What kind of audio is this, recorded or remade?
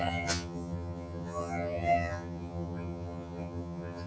remade